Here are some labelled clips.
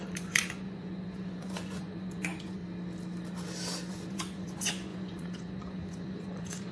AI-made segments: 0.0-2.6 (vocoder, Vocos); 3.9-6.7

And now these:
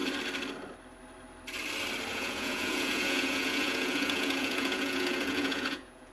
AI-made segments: 2.1-6.1 (vocoder, Vocos)

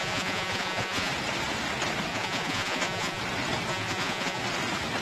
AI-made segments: 0.0-1.1 (vocoder, Vocos); 2.1-3.2; 3.7-4.4

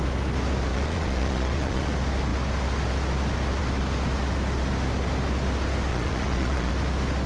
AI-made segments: 0.7-1.9 (vocoder, Vocos); 5.9-6.7

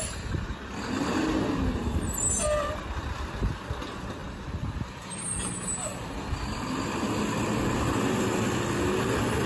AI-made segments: none

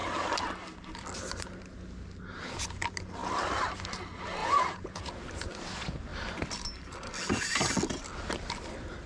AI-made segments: 4.4-5.1 (vocoder, Vocos)